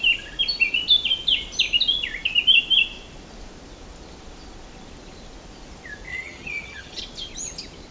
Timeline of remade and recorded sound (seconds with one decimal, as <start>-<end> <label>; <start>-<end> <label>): 0.0-6.1 recorded; 6.1-7.0 remade; 7.0-7.9 recorded